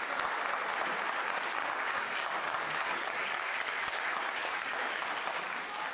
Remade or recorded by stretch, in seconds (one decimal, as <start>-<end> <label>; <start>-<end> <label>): 0.0-1.6 recorded; 1.6-5.1 remade; 5.1-5.9 recorded